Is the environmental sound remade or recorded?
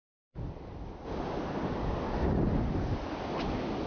recorded